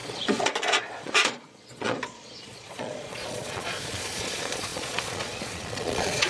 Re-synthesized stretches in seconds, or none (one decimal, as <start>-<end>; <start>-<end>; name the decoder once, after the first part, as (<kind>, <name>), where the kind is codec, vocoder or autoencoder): 0.0-6.3 (vocoder, Vocos)